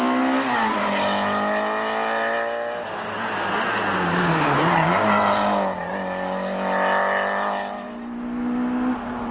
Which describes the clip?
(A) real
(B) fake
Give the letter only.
A